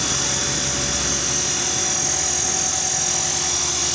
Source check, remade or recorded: recorded